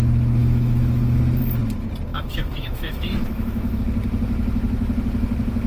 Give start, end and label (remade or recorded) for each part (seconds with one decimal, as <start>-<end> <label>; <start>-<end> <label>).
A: 0.0-0.4 recorded; 0.4-1.2 remade; 1.2-2.1 recorded; 2.1-3.8 remade; 3.8-5.7 recorded